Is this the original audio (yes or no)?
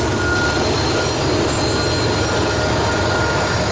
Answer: yes